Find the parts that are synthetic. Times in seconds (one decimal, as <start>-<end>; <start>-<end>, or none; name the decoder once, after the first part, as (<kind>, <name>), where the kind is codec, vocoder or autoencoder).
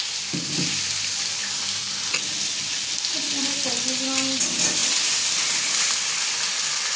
none